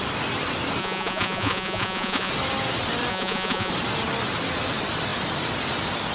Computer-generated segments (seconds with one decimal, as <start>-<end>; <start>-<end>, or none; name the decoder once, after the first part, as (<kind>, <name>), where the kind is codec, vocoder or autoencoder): 0.8-2.3 (vocoder, Vocos); 3.1-3.7

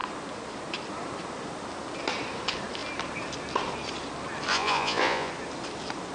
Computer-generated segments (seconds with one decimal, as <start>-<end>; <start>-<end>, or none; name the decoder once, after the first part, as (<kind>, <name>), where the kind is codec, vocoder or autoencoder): 4.5-5.3 (vocoder, Vocos)

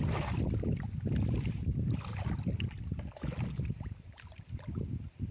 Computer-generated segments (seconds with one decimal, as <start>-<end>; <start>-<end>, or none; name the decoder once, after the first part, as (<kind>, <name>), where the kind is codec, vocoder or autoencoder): 1.6-4.8 (vocoder, BigVGAN v2)

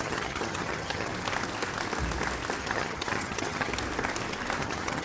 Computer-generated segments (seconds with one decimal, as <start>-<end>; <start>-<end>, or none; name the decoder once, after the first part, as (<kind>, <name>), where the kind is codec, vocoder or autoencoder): 0.0-1.1 (vocoder, HiFi-GAN); 2.6-3.7; 4.6-5.0

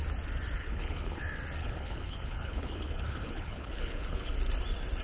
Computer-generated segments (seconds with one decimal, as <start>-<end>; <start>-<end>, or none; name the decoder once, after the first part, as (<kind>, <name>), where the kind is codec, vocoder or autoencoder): 0.6-1.2 (codec, HILCodec); 1.6-4.3